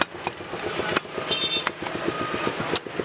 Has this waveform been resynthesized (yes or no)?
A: no